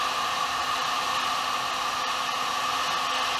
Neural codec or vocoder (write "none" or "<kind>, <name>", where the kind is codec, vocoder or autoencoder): none